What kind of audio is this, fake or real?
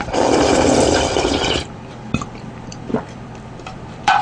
fake